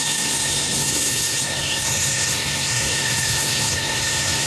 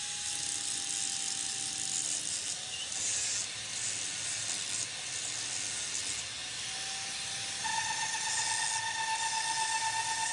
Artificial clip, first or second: first